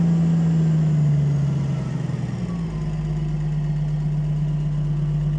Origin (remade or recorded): recorded